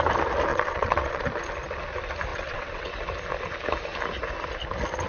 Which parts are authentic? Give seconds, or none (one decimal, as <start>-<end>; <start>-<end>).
0.0-0.5; 1.2-2.3; 2.9-5.1

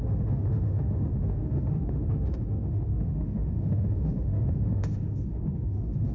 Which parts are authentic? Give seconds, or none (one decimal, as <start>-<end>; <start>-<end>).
none

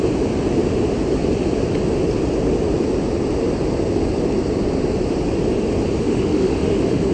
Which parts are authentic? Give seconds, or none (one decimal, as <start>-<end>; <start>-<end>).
0.0-6.0